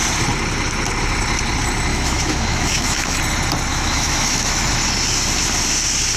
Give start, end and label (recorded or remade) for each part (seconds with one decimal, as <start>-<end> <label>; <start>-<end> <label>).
0.0-1.9 recorded; 1.9-3.2 remade; 3.2-3.7 recorded; 3.7-4.7 remade; 4.7-6.2 recorded